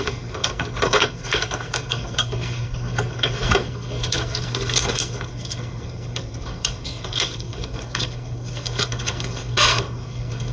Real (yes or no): no